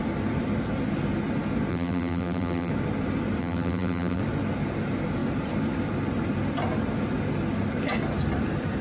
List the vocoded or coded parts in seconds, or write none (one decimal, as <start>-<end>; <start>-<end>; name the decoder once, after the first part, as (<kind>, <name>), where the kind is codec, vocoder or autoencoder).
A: 1.7-2.7 (vocoder, BigVGAN v2); 3.4-4.2